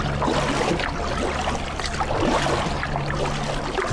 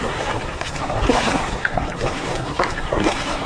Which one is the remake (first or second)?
second